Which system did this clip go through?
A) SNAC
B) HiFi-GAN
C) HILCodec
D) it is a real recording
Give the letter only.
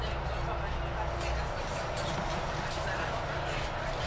D